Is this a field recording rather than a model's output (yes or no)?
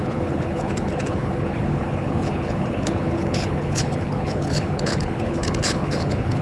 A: no